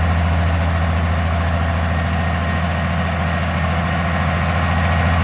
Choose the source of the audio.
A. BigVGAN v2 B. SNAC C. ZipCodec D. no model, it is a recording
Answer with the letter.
D